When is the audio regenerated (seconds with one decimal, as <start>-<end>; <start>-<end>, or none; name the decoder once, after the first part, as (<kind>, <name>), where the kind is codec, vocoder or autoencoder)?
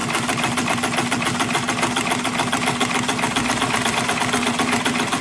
none